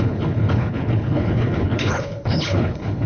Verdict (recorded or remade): remade